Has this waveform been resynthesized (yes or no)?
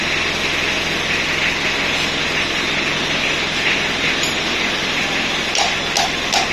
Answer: no